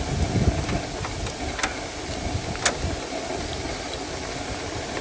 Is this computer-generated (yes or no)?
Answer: no